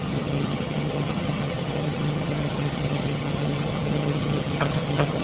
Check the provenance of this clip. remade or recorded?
remade